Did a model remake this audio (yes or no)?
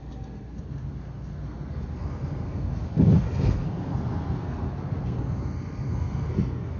yes